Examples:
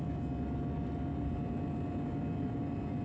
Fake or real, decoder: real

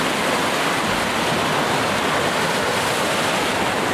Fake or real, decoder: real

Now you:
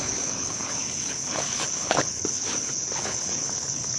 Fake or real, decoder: fake, codec, HILCodec